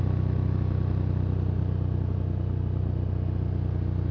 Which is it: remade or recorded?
recorded